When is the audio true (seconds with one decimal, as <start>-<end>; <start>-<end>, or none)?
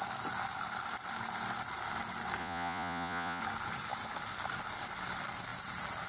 0.0-2.4; 3.4-6.1